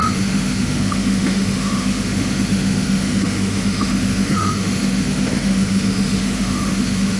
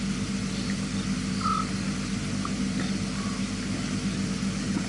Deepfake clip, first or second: first